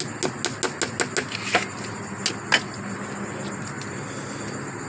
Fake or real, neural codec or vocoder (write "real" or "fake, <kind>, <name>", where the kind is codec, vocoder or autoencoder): real